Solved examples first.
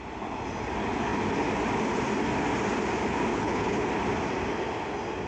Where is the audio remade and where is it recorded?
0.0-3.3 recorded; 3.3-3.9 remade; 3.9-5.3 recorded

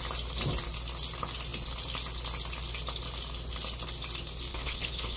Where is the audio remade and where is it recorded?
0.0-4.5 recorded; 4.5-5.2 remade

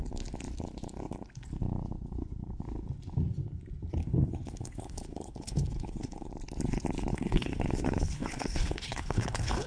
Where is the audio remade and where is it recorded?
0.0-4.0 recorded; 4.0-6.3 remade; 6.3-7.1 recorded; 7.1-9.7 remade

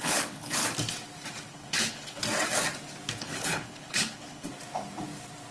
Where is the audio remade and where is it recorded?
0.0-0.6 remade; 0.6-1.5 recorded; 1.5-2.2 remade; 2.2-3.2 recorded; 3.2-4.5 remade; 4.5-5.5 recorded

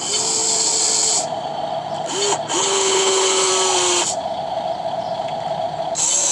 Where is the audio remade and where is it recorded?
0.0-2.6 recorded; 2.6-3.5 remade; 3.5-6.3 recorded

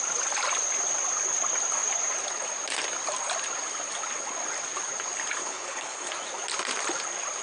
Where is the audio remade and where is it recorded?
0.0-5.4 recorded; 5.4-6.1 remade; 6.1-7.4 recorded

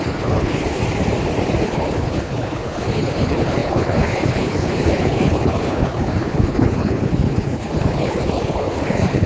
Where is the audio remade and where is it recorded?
0.0-0.8 remade; 0.8-1.6 recorded; 1.6-9.3 remade

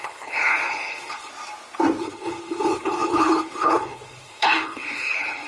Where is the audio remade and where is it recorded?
0.0-1.3 remade; 1.3-2.0 recorded; 2.0-5.5 remade